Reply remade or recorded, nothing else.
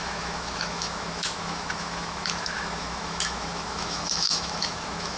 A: remade